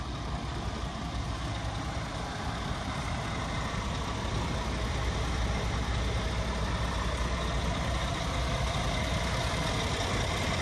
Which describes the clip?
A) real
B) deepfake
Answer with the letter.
A